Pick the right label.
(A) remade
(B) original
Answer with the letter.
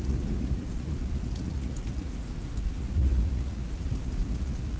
A